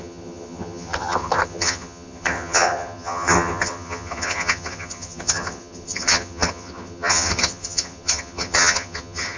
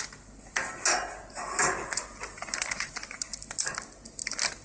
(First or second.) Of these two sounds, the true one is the second